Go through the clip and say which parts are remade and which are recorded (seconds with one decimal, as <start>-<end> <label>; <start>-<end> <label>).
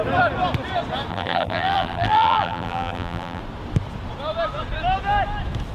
0.0-1.1 recorded; 1.1-3.4 remade; 3.4-5.7 recorded